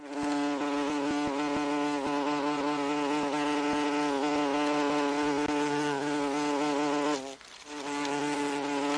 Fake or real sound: real